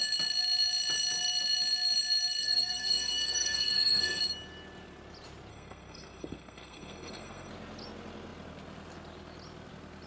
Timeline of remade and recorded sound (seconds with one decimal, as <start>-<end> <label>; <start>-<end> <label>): 0.0-2.4 recorded; 2.4-4.2 remade; 4.2-5.5 recorded; 5.5-7.5 remade; 7.5-10.1 recorded